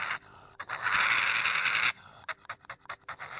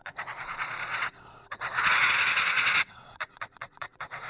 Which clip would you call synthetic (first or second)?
second